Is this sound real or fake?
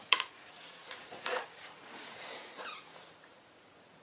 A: fake